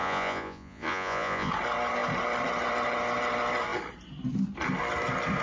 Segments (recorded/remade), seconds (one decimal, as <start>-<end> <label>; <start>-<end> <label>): 0.0-1.5 remade; 1.5-5.4 recorded